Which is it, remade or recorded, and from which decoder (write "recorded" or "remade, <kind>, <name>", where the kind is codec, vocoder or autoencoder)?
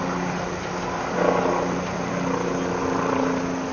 recorded